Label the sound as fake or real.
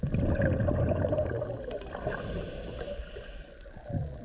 real